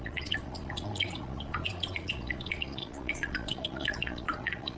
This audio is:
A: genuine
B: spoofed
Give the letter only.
B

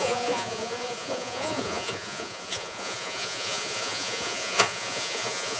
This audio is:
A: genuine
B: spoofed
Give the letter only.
B